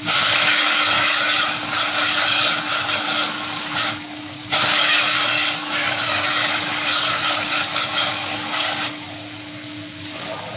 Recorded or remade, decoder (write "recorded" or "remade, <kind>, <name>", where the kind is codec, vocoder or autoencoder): remade, codec, DAC